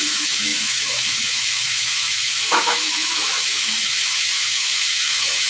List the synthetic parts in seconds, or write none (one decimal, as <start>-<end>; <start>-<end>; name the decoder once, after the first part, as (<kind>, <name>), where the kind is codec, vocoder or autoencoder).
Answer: 0.0-5.5 (autoencoder, DAC-VAE)